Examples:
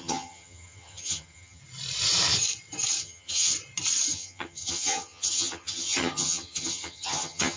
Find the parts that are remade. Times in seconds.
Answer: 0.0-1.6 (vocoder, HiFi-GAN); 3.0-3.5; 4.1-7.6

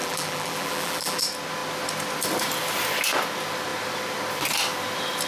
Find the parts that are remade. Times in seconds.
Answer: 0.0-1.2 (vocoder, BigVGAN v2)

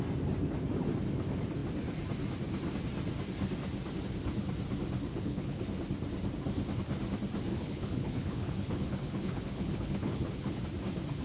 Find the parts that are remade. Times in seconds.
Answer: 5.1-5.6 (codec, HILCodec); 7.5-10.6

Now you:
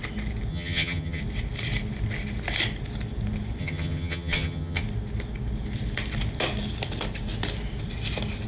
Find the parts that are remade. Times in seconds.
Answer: 0.5-1.2 (vocoder, HiFi-GAN); 3.6-4.8

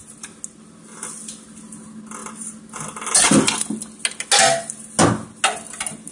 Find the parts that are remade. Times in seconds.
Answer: none

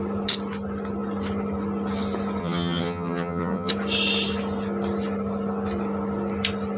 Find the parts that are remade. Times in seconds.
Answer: 2.4-3.7 (vocoder, HiFi-GAN)

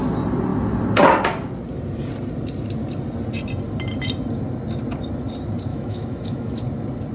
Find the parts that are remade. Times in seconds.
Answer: 5.7-6.6 (autoencoder, DAC-VAE)

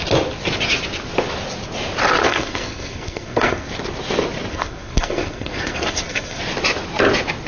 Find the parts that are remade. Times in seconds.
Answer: 2.2-3.7 (codec, SNAC); 4.5-6.4